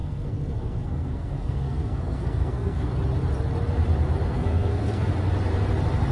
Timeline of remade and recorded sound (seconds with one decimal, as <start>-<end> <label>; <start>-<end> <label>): 0.0-2.9 remade; 2.9-4.3 recorded; 4.3-5.1 remade; 5.1-6.1 recorded

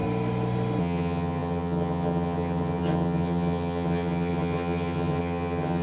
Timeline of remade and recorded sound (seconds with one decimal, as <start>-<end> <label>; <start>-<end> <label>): 0.0-0.8 recorded; 0.8-5.8 remade

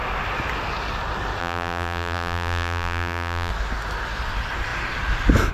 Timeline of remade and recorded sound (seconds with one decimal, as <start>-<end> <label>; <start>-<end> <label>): 0.0-1.4 recorded; 1.4-3.5 remade; 3.5-5.5 recorded

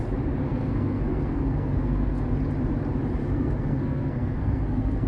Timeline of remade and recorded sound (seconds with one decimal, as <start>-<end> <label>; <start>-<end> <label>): 0.0-0.4 recorded; 0.4-2.2 remade; 2.2-3.2 recorded; 3.2-5.1 remade

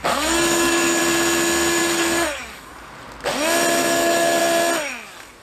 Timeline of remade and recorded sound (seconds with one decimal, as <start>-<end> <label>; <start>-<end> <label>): 0.0-1.0 remade; 1.0-1.8 recorded; 1.8-2.7 remade; 2.7-3.8 recorded; 3.8-4.4 remade; 4.4-5.4 recorded

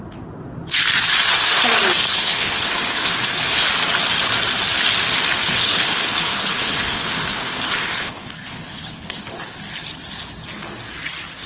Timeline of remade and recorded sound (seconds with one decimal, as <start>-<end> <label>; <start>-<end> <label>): 0.0-2.1 recorded; 2.1-3.6 remade; 3.6-5.4 recorded; 5.4-9.2 remade; 9.2-11.5 recorded

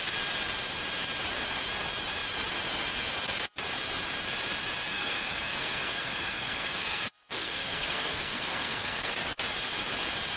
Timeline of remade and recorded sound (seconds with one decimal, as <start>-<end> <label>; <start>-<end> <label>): 0.0-4.9 recorded; 4.9-9.1 remade; 9.1-10.4 recorded

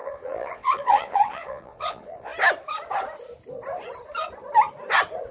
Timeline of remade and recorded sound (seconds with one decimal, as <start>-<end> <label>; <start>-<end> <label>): 0.0-2.3 remade; 2.3-5.3 recorded